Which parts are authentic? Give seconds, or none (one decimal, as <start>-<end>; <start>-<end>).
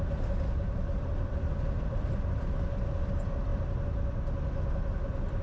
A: 0.0-5.4